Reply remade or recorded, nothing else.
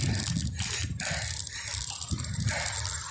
recorded